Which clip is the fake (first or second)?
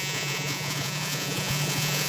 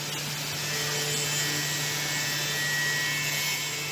first